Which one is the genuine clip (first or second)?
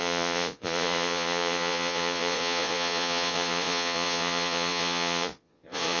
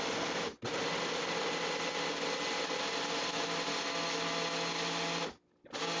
second